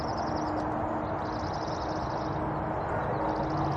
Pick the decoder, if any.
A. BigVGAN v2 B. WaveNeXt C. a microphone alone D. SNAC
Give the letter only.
C